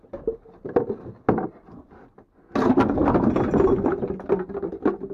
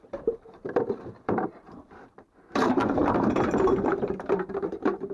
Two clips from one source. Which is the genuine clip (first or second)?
first